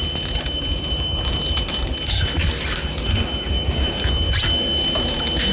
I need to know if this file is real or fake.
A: real